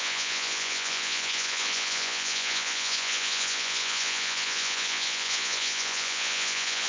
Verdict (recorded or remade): remade